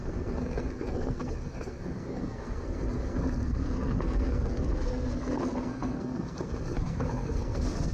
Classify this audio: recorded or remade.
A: remade